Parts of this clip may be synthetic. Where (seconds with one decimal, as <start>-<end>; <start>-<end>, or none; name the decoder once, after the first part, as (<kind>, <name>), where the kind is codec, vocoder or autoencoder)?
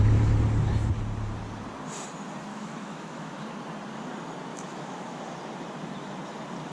2.5-3.3 (autoencoder, DAC-VAE); 4.5-5.2